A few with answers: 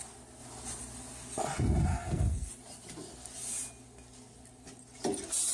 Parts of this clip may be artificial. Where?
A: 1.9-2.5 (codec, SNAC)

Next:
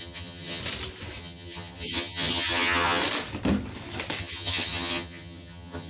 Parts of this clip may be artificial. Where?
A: 0.0-0.6 (vocoder, HiFi-GAN); 1.2-3.0; 4.2-5.9

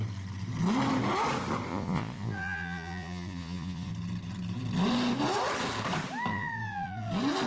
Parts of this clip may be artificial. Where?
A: 1.7-3.9 (vocoder, Vocos); 6.3-7.1